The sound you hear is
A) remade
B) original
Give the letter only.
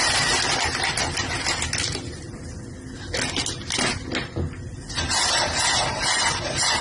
B